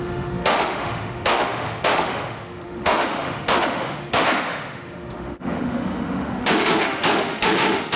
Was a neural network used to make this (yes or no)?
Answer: yes